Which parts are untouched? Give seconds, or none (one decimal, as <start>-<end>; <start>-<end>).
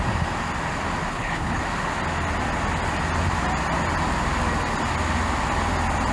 0.0-1.1; 1.6-6.1